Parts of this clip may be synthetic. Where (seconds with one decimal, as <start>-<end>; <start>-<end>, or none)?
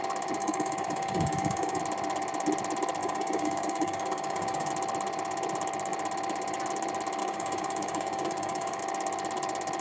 0.4-1.8; 3.0-4.7; 7.2-8.8